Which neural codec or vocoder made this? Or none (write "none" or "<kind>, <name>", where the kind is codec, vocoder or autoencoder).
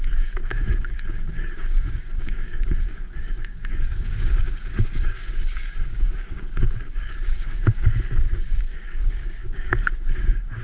codec, DAC